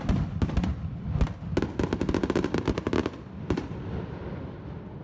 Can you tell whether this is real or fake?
real